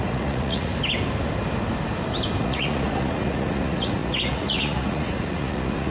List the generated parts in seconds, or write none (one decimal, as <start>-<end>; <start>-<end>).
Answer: 0.0-0.7; 2.4-5.9